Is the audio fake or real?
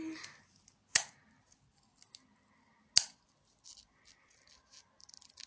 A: real